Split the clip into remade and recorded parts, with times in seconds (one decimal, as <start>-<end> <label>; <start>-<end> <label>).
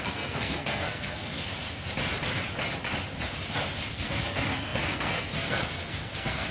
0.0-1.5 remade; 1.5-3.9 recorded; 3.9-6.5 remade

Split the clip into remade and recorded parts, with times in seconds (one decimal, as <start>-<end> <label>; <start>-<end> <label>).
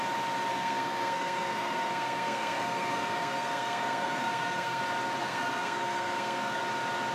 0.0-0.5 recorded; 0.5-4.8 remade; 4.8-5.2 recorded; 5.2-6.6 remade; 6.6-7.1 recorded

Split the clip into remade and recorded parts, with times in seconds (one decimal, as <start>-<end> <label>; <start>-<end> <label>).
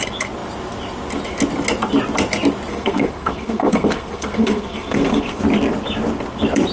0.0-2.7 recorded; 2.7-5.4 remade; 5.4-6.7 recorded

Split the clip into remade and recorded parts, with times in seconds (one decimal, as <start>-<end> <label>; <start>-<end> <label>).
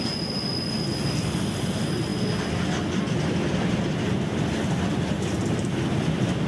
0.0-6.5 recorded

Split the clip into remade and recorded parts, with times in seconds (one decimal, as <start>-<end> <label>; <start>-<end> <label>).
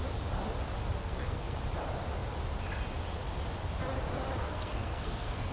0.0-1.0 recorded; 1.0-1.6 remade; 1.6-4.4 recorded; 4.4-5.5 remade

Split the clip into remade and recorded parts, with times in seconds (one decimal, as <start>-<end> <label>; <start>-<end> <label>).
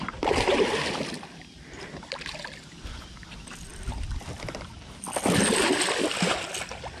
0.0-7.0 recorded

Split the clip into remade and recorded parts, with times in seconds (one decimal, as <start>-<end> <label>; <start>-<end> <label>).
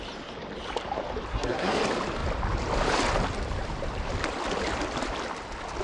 0.0-1.3 recorded; 1.3-1.8 remade; 1.8-5.8 recorded